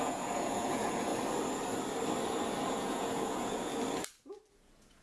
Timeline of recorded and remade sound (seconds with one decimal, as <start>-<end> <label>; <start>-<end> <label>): 0.0-1.1 remade; 1.1-2.7 recorded; 2.7-3.7 remade; 3.7-4.5 recorded; 4.5-5.0 remade